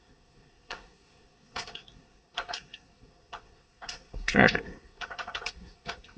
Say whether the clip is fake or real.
fake